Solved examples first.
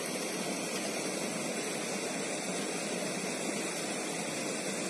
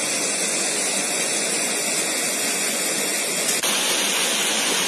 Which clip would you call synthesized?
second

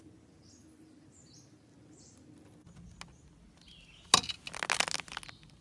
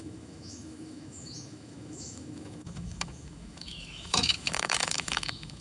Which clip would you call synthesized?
second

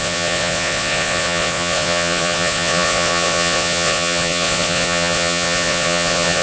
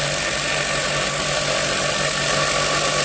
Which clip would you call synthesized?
first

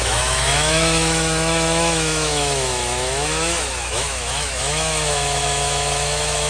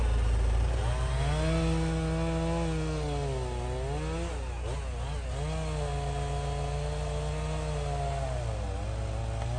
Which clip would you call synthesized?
first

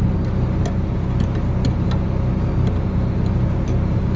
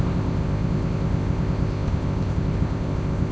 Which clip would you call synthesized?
second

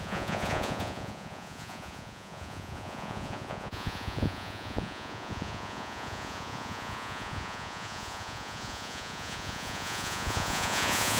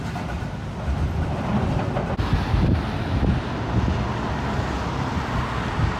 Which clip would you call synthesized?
first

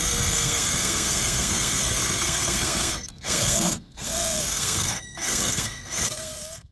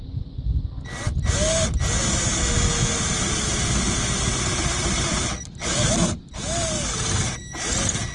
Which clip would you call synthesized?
first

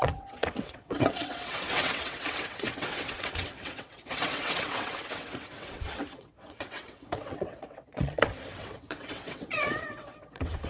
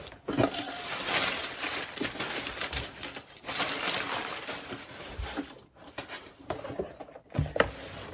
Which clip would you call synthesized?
first